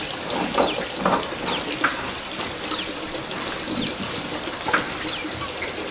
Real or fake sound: real